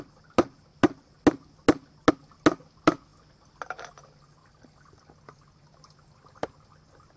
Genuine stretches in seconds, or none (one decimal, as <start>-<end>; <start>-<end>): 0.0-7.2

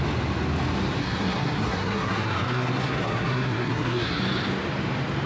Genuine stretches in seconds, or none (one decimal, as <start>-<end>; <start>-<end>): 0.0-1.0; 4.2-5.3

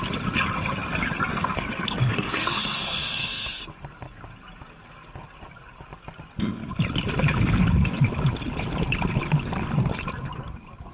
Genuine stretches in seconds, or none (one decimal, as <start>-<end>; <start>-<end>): 0.0-1.3; 3.6-10.9

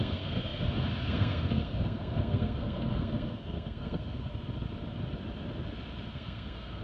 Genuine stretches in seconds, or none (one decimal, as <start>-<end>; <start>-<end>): 4.3-6.1